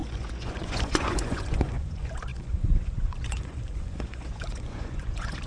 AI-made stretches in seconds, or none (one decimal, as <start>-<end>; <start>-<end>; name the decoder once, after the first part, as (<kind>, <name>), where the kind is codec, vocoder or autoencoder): 0.0-5.5 (vocoder, Vocos)